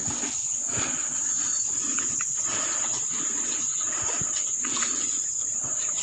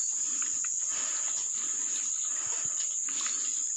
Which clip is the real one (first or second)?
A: second